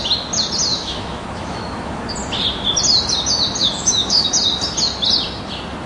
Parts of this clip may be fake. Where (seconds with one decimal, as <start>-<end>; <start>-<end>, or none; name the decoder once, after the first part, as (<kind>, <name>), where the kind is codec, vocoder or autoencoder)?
0.7-2.0 (autoencoder, DAC-VAE); 3.6-4.3